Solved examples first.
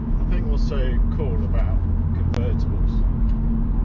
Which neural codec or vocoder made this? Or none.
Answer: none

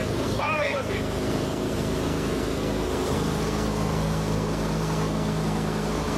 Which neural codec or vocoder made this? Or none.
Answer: codec, SNAC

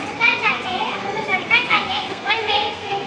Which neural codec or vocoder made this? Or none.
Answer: codec, SNAC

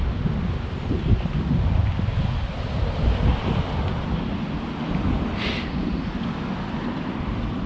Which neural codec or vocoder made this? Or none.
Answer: none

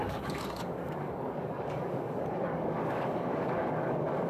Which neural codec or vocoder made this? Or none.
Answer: codec, DAC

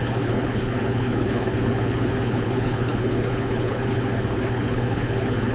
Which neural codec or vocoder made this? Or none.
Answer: codec, HILCodec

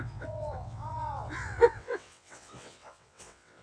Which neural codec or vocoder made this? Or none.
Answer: vocoder, WaveNeXt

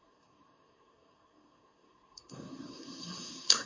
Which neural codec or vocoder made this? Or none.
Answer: codec, SNAC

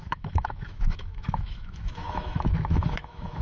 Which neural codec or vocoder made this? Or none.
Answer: autoencoder, DAC-VAE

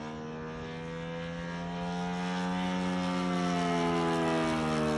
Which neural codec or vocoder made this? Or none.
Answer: none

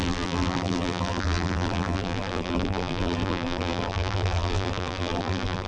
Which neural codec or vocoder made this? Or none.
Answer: vocoder, BigVGAN v2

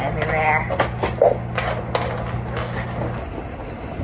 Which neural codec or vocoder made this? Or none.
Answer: none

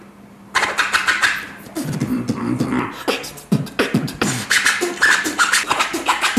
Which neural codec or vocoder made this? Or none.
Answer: vocoder, BigVGAN v2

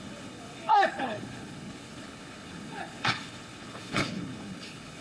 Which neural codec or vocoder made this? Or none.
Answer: codec, HILCodec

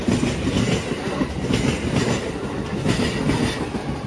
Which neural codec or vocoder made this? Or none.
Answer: none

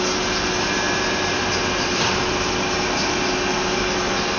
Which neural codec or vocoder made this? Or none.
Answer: none